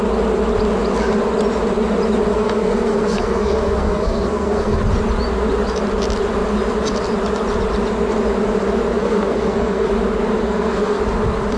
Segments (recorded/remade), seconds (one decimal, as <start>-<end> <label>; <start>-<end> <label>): 0.0-2.3 recorded; 2.3-4.8 remade; 4.8-9.0 recorded; 9.0-9.9 remade; 9.9-10.4 recorded; 10.4-11.0 remade; 11.0-11.6 recorded